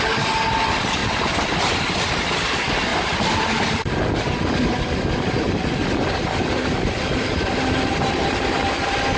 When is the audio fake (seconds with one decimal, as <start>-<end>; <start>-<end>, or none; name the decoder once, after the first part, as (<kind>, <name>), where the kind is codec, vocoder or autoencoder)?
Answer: none